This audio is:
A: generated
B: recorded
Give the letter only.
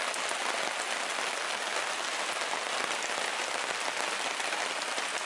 B